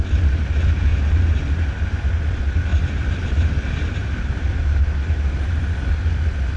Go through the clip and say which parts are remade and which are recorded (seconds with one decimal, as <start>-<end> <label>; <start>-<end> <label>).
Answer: 0.0-2.7 recorded; 2.7-5.9 remade; 5.9-6.6 recorded